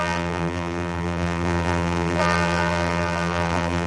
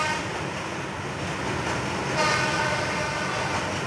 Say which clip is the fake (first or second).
first